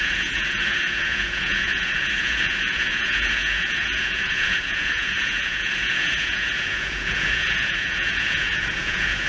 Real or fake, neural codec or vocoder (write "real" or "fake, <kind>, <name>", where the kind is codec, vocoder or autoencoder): fake, vocoder, Vocos